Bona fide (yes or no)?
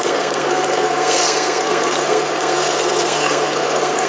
no